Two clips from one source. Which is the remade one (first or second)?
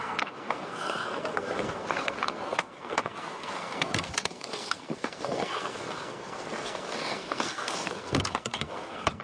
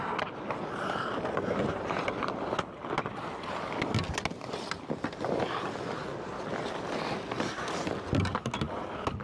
first